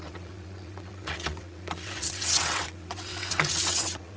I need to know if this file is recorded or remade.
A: remade